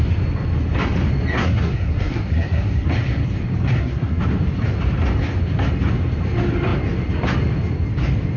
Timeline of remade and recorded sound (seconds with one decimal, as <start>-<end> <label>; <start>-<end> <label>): 0.0-1.3 recorded; 1.3-2.9 remade; 2.9-3.7 recorded; 3.7-4.2 remade; 4.2-8.4 recorded